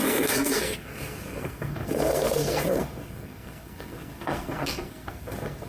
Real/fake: fake